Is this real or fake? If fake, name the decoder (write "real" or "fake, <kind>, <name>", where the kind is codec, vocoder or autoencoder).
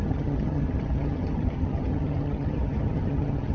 fake, vocoder, HiFi-GAN